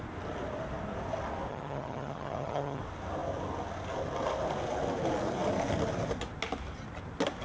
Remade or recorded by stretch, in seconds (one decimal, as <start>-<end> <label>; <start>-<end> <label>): 0.0-1.5 recorded; 1.5-2.8 remade; 2.8-7.4 recorded